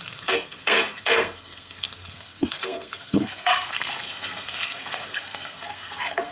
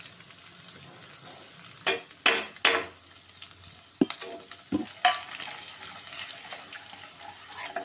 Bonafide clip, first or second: second